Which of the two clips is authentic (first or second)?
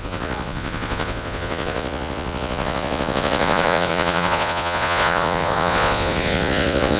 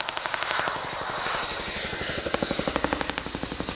second